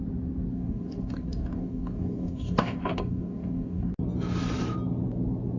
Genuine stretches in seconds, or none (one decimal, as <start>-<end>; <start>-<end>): 0.0-0.5; 3.9-5.6